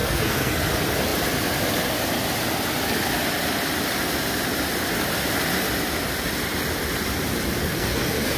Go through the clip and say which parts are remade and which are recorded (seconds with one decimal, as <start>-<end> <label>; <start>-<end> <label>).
0.0-0.7 remade; 0.7-7.6 recorded; 7.6-8.4 remade